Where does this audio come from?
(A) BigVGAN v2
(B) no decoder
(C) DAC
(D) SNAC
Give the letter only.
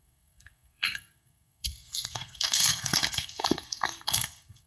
D